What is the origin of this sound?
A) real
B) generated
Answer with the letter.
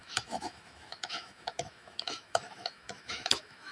B